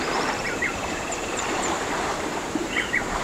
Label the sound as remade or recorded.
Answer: remade